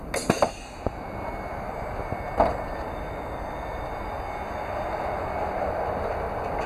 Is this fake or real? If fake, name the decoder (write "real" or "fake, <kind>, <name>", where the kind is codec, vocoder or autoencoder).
real